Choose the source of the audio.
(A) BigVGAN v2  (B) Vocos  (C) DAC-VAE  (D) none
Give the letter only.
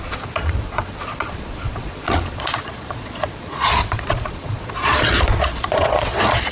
B